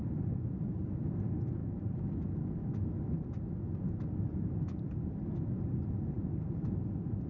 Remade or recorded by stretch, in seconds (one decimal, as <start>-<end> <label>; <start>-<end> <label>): 0.0-7.3 recorded